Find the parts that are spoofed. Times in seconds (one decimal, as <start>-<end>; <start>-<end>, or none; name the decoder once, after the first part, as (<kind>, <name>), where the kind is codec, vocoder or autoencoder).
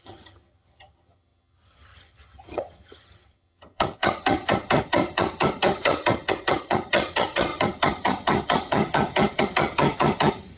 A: 0.0-10.6 (vocoder, HiFi-GAN)